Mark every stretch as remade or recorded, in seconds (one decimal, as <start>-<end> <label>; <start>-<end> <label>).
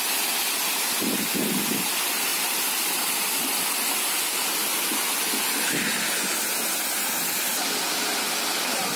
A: 0.0-9.0 recorded